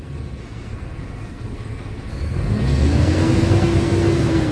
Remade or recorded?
remade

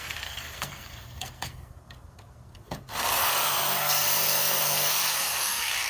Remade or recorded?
remade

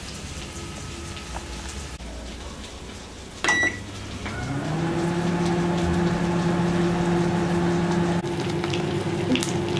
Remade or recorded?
recorded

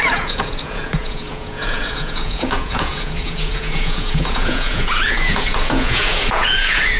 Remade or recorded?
remade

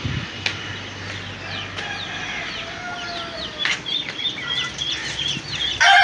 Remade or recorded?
recorded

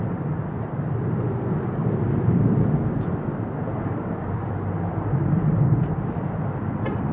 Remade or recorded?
remade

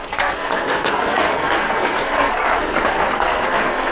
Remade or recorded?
remade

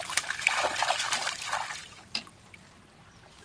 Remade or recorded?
recorded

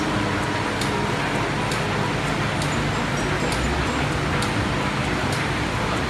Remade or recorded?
recorded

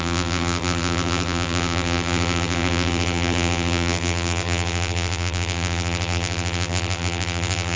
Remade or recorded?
remade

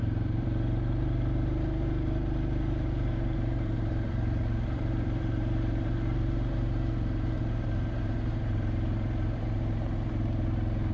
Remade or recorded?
remade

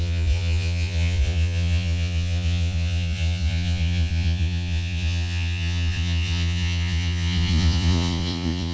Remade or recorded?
remade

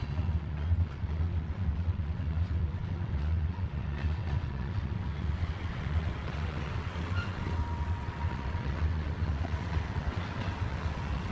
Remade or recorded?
remade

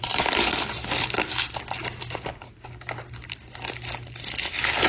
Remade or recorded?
recorded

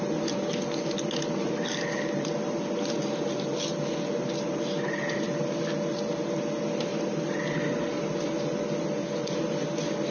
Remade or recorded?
recorded